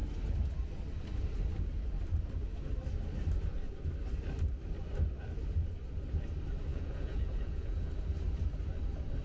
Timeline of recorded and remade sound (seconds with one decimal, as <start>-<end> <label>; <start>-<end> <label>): 0.0-6.7 recorded; 6.7-7.9 remade; 7.9-9.2 recorded